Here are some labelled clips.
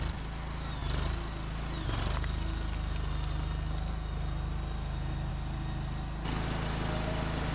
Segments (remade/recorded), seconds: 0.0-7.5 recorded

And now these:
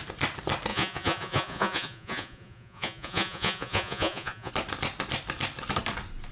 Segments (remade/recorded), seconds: 0.0-0.7 recorded; 0.7-4.5 remade; 4.5-6.3 recorded

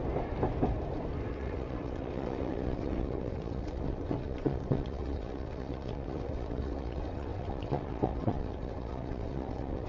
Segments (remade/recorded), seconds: 0.0-1.3 recorded; 1.3-9.9 remade